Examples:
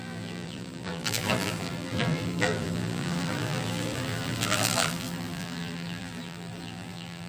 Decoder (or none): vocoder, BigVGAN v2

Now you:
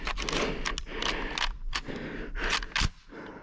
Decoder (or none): none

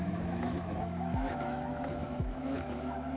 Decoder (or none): autoencoder, DAC-VAE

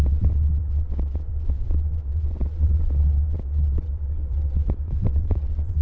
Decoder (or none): vocoder, WaveNeXt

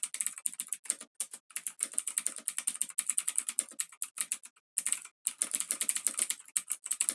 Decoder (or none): none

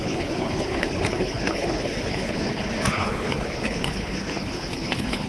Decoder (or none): codec, HILCodec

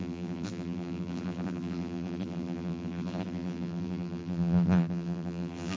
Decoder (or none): vocoder, BigVGAN v2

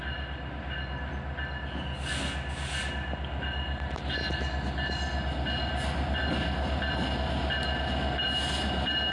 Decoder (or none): none